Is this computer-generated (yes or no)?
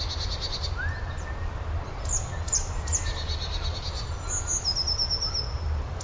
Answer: no